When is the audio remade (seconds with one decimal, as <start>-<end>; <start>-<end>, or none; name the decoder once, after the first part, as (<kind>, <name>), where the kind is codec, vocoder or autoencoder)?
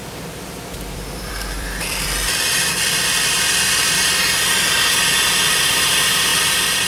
0.0-4.1 (vocoder, BigVGAN v2); 6.3-6.9